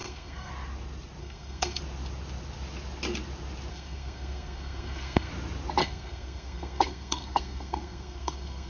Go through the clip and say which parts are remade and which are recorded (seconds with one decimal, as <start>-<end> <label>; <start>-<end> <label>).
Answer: 0.0-0.5 remade; 0.5-1.2 recorded; 1.2-1.8 remade; 1.8-3.7 recorded; 3.7-5.3 remade; 5.3-5.8 recorded; 5.8-8.7 remade